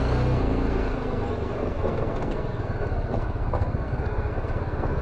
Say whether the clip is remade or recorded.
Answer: remade